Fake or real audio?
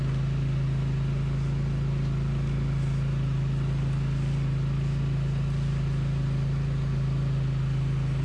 real